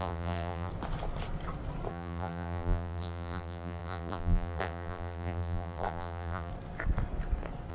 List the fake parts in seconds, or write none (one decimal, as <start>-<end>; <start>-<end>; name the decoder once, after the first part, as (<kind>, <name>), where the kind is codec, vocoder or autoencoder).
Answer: 0.0-0.7 (vocoder, BigVGAN v2); 1.9-6.5